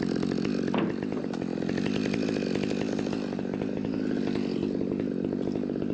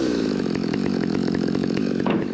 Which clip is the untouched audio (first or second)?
first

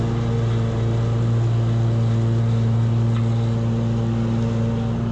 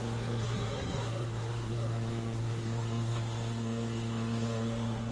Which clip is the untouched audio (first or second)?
first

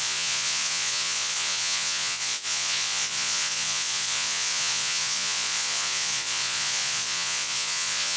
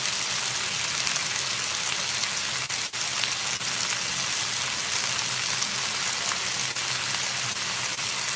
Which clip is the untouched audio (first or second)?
second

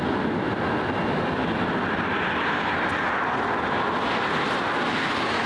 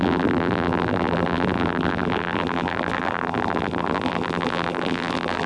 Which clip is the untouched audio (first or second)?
first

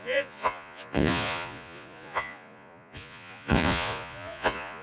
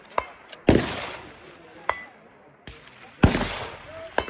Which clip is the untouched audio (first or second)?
second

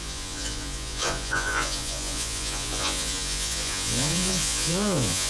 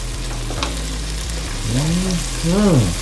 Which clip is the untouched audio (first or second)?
second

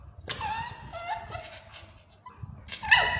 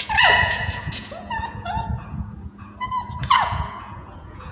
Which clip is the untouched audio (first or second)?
first